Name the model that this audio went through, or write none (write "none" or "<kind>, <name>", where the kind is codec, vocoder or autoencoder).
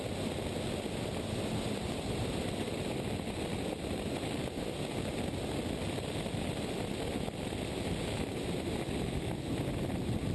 none